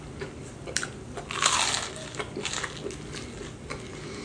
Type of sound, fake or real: real